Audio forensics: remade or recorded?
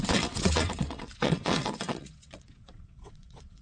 remade